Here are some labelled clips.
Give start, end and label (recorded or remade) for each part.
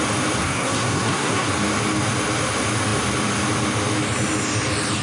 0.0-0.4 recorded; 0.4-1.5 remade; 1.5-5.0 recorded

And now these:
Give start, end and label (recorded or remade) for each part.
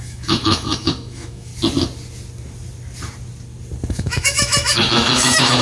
0.0-1.5 remade; 1.5-3.9 recorded; 3.9-5.6 remade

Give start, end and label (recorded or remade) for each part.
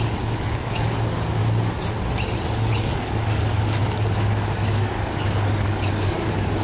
0.0-1.4 remade; 1.4-2.7 recorded; 2.7-6.6 remade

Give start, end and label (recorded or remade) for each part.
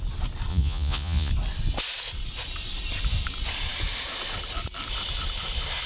0.0-0.5 recorded; 0.5-1.3 remade; 1.3-5.9 recorded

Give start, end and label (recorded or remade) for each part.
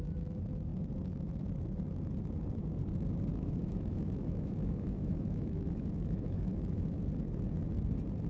0.0-3.3 recorded; 3.3-7.0 remade; 7.0-8.3 recorded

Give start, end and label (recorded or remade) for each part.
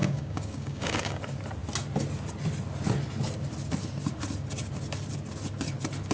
0.0-1.2 remade; 1.2-6.1 recorded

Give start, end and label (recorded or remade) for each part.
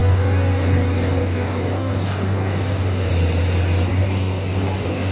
0.0-3.1 remade; 3.1-3.9 recorded; 3.9-5.1 remade